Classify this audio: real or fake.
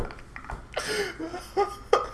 real